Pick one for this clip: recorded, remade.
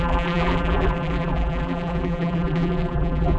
remade